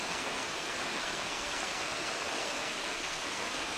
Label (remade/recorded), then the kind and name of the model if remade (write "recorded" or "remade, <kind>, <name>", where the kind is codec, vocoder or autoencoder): remade, codec, SNAC